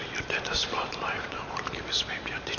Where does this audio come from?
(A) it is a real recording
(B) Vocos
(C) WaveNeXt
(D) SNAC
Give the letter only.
A